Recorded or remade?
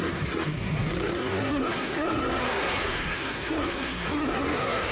remade